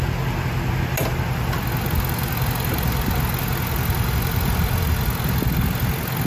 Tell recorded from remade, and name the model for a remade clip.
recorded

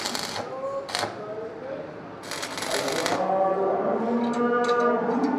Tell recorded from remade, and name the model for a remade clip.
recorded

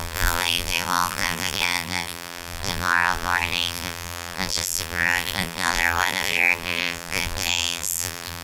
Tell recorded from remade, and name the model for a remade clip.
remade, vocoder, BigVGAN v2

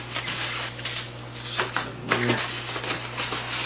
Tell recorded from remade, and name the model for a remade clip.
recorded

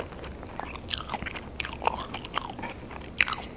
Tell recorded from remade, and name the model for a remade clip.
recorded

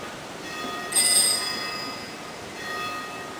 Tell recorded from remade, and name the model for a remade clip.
recorded